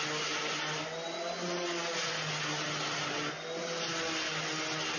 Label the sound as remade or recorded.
recorded